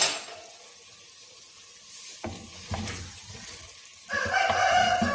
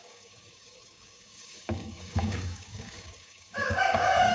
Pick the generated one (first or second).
second